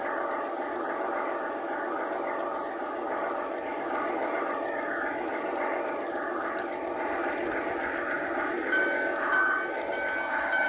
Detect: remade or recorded recorded